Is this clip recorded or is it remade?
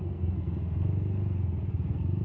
remade